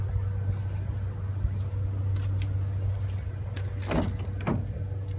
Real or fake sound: real